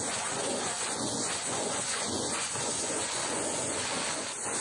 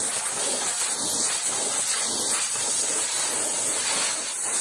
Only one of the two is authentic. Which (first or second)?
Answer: second